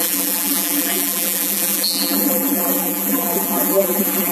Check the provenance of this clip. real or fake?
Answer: fake